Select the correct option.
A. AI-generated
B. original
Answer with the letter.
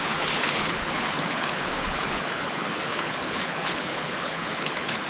A